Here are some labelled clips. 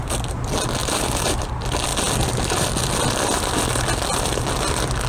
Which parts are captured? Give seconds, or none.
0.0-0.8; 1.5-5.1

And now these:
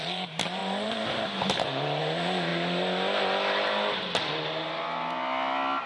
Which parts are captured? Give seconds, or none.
2.5-5.9